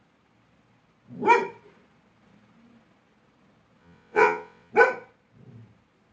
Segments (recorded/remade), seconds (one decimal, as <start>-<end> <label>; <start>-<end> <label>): 0.0-3.8 recorded; 3.8-4.7 remade; 4.7-6.1 recorded

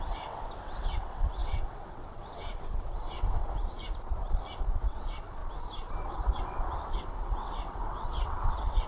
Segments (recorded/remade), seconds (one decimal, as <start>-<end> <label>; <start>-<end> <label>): 0.0-3.4 remade; 3.4-4.7 recorded; 4.7-5.4 remade; 5.4-6.1 recorded; 6.1-8.9 remade

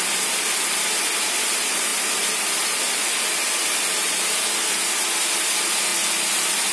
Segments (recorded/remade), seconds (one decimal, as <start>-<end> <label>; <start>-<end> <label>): 0.0-6.7 recorded